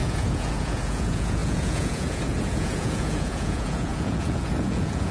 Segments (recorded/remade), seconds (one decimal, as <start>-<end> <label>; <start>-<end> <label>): 0.0-5.1 remade